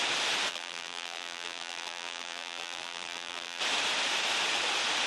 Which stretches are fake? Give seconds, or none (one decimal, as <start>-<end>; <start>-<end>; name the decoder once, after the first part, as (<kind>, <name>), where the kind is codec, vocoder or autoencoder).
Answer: 0.5-3.6 (vocoder, BigVGAN v2)